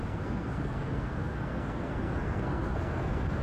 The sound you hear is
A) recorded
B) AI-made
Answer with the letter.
B